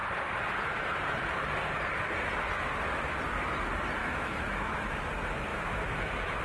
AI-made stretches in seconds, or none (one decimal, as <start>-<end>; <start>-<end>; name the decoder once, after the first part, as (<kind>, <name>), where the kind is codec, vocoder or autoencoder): 4.0-5.0 (autoencoder, DAC-VAE); 5.5-6.4